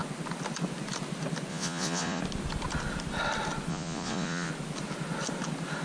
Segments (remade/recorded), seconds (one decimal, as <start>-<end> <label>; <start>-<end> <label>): 0.0-1.5 recorded; 1.5-2.2 remade; 2.2-3.7 recorded; 3.7-4.5 remade; 4.5-5.8 recorded

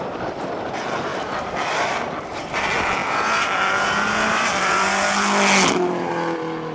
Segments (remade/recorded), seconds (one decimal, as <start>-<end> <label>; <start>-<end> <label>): 0.0-6.7 recorded

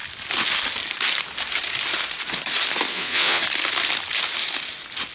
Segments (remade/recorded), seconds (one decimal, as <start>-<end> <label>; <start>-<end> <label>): 0.0-2.9 recorded; 2.9-3.4 remade; 3.4-5.1 recorded

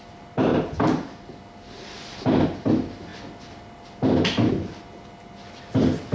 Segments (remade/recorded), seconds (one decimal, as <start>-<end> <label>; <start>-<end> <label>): 0.0-6.1 recorded